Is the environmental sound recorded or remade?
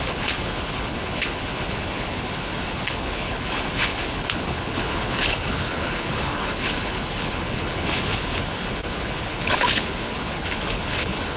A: remade